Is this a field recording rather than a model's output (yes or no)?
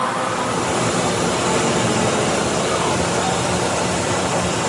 no